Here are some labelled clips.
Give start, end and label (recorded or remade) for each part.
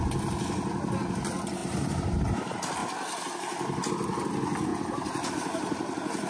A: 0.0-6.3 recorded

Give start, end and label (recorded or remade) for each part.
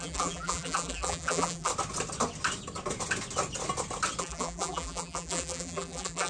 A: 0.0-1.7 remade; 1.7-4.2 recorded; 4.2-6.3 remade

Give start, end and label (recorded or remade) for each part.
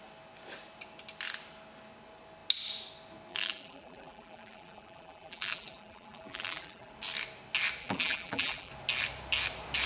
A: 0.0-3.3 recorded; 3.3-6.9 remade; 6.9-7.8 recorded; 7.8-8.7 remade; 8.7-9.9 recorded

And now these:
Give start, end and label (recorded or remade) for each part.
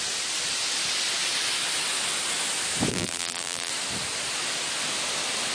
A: 0.0-2.9 recorded; 2.9-3.7 remade; 3.7-5.5 recorded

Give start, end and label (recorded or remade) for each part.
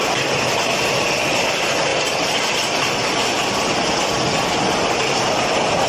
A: 0.0-1.9 recorded; 1.9-2.5 remade; 2.5-5.9 recorded